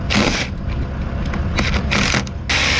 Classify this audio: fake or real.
real